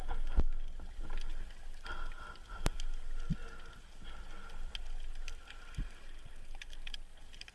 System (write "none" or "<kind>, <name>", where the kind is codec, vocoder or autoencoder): none